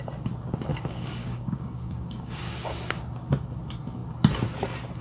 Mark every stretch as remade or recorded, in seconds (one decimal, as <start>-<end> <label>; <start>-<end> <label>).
0.0-0.7 recorded; 0.7-2.5 remade; 2.5-5.0 recorded